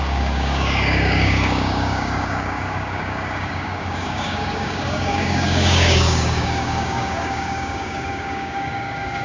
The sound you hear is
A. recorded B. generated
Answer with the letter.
B